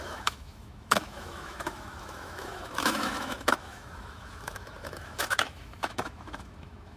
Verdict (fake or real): fake